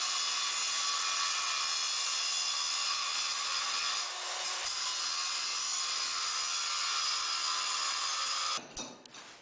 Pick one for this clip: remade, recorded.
recorded